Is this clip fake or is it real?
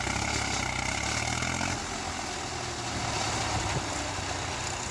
real